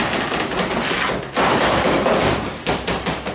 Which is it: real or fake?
real